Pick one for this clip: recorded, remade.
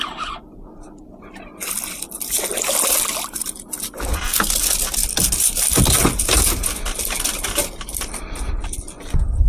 recorded